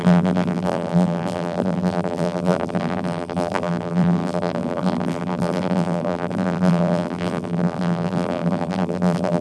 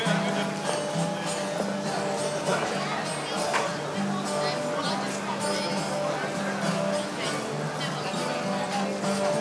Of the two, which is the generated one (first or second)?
first